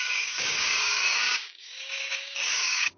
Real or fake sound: fake